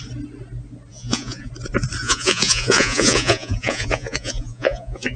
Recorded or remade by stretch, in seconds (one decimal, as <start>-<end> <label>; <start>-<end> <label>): 0.0-0.9 recorded; 0.9-1.5 remade; 1.5-2.0 recorded; 2.0-5.2 remade